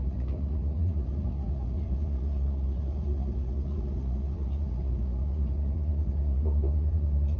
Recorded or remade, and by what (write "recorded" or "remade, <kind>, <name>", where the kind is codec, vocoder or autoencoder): remade, vocoder, Vocos